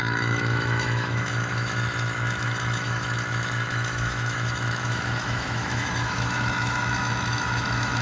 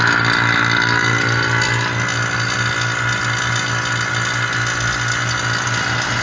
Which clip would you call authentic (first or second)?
second